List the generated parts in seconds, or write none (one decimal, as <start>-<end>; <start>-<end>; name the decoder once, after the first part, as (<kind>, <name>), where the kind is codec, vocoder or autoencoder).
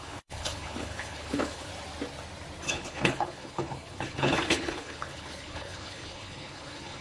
0.0-1.7 (codec, HILCodec); 2.7-7.0